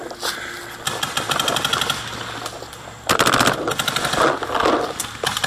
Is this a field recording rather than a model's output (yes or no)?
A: yes